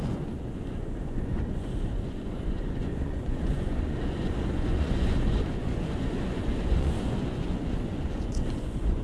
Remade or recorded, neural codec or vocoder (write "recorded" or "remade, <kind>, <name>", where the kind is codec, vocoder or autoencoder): remade, vocoder, Vocos